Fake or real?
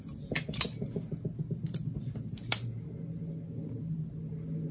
real